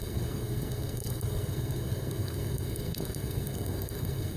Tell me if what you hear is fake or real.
fake